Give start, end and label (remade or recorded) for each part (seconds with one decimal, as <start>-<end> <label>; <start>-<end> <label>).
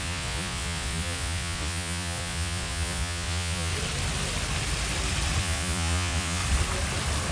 0.0-3.7 remade; 3.7-5.4 recorded; 5.4-6.4 remade; 6.4-7.3 recorded